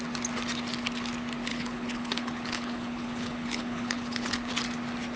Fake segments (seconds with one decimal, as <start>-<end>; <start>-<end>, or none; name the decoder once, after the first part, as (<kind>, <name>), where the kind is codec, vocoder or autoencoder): 1.5-4.5 (codec, HILCodec)